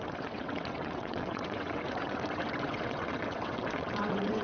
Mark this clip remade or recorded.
remade